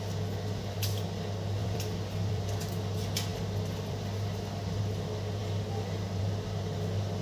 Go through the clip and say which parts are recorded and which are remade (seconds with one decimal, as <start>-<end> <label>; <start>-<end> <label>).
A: 0.0-1.6 recorded; 1.6-2.6 remade; 2.6-3.3 recorded; 3.3-4.8 remade; 4.8-7.2 recorded